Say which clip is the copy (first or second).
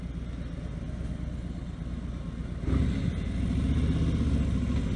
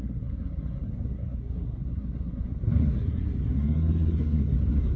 second